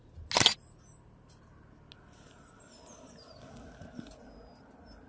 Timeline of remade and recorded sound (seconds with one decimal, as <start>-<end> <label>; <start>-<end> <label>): 0.0-5.1 recorded